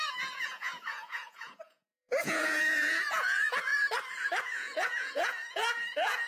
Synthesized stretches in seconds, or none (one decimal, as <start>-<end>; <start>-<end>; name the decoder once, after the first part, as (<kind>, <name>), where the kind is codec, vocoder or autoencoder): 0.0-3.7 (vocoder, Vocos); 4.4-6.3